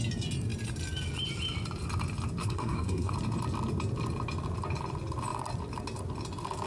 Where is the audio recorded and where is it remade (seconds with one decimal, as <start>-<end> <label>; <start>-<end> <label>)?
0.0-2.4 recorded; 2.4-3.1 remade; 3.1-6.7 recorded